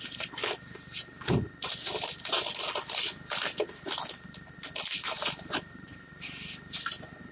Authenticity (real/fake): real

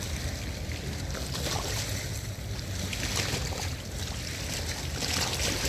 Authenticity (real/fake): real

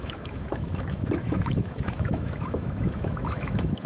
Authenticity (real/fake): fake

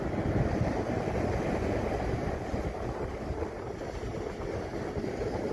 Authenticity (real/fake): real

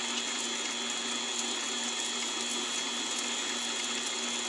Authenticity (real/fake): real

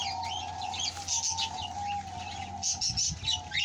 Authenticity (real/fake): real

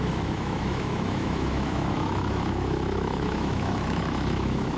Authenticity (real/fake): fake